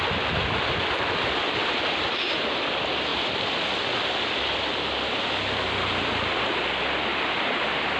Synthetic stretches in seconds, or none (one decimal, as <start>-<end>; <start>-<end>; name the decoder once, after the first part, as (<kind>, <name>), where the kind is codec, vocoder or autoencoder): 3.1-3.8 (vocoder, BigVGAN v2); 7.1-8.0